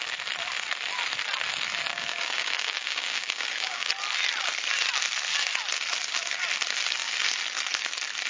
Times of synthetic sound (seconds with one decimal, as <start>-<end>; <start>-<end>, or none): 1.9-3.9